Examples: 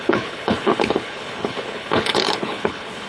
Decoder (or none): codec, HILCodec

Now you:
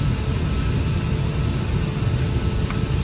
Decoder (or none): none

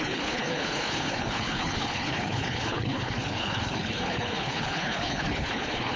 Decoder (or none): codec, HILCodec